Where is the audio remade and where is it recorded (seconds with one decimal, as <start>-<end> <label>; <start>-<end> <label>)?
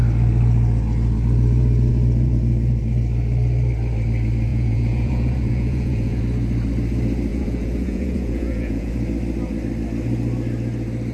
0.0-4.5 recorded; 4.5-6.2 remade; 6.2-7.3 recorded; 7.3-8.9 remade; 8.9-11.1 recorded